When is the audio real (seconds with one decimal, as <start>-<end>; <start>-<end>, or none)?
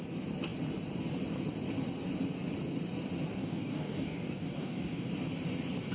0.0-3.3; 5.1-5.9